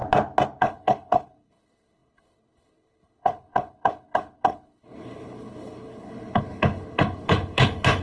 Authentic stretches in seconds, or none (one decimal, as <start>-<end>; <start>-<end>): 0.0-0.6